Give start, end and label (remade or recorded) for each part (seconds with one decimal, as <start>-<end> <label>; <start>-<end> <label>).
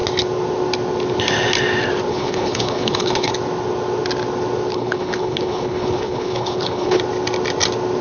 0.0-2.1 recorded; 2.1-3.3 remade; 3.3-4.7 recorded; 4.7-7.0 remade; 7.0-8.0 recorded